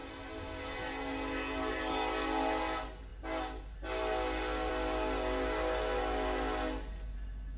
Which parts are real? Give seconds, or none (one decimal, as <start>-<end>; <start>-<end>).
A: 0.0-7.6